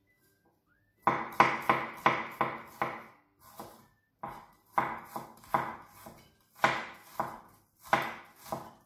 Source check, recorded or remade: recorded